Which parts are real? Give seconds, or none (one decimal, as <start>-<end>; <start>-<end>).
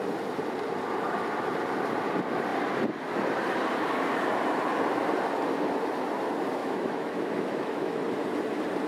0.0-6.6; 8.0-8.9